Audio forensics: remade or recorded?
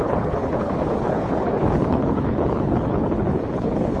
remade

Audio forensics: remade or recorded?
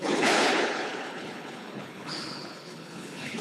remade